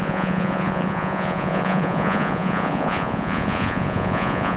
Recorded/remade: remade